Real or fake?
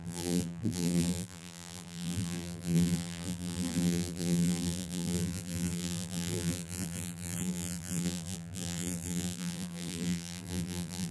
fake